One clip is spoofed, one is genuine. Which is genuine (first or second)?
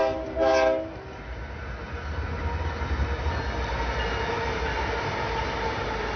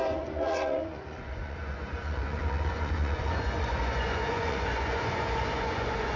first